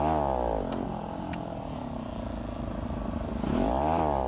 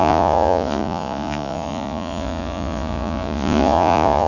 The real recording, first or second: first